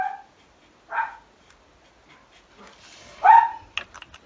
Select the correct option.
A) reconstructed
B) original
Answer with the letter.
B